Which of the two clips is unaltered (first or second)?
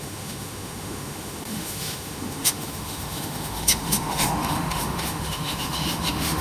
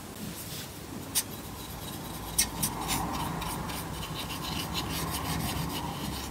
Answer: second